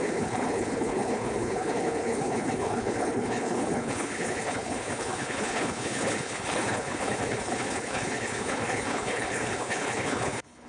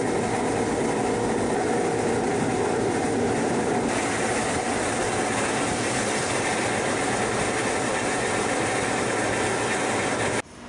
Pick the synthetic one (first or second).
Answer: first